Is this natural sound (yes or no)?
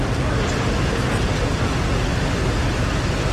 yes